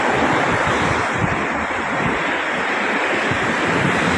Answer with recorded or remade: remade